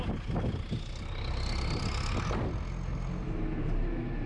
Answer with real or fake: real